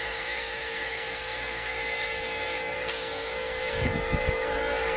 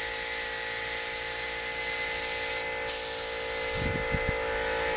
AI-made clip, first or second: first